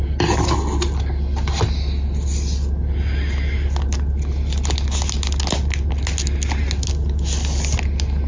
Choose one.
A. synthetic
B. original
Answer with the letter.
B